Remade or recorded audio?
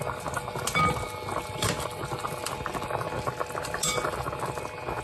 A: recorded